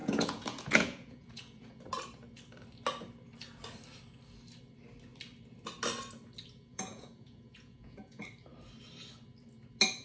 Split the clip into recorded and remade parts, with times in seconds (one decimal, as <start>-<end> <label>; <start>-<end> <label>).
0.0-1.8 remade; 1.8-6.7 recorded; 6.7-8.2 remade; 8.2-10.0 recorded